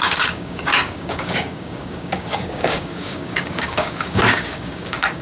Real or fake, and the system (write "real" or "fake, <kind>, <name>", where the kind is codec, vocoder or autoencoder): fake, codec, DAC